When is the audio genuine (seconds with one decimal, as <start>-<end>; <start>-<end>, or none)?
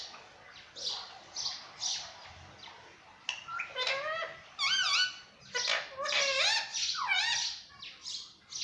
0.0-6.7; 7.2-8.6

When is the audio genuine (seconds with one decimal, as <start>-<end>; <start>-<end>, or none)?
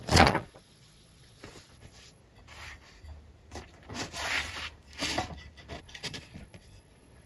2.2-5.8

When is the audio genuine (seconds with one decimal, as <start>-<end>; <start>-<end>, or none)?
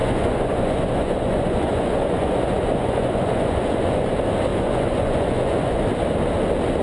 4.1-4.5; 5.8-6.8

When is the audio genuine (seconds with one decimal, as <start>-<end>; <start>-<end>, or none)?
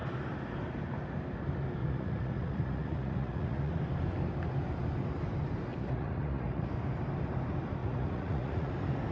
0.0-1.8; 3.7-5.7; 6.7-7.8; 8.7-9.1